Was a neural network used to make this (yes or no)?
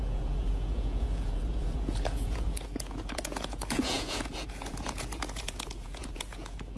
yes